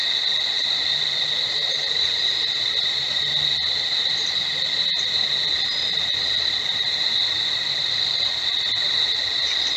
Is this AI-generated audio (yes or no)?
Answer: no